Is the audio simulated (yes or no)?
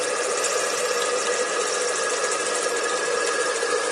no